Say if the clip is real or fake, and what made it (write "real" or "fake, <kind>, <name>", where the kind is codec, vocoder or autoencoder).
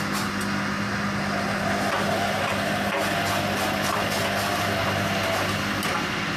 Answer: real